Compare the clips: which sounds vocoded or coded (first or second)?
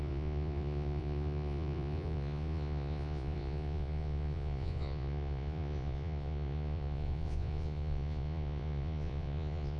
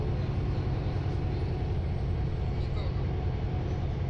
first